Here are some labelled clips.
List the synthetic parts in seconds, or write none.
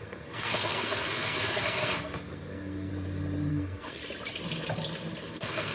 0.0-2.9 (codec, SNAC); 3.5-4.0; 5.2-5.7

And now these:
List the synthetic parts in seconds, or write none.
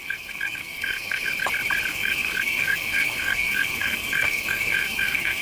0.0-1.3 (codec, SNAC); 1.9-5.4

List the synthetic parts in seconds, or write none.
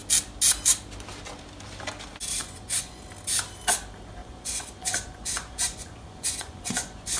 2.4-3.0 (vocoder, Vocos); 4.2-7.2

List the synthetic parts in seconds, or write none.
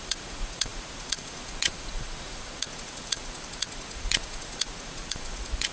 0.0-5.7 (vocoder, Vocos)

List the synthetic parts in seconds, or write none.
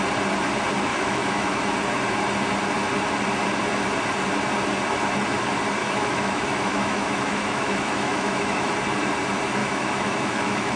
0.9-1.6 (autoencoder, DAC-VAE); 5.8-8.7; 9.6-10.8